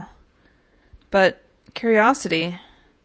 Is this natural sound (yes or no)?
no